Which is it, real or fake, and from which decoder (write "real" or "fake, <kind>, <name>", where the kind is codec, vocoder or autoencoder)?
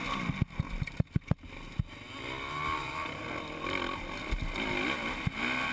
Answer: real